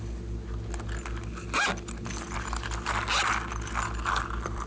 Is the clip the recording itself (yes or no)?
yes